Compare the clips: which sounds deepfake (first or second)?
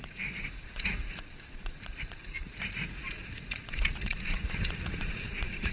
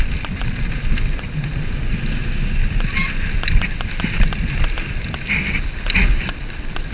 first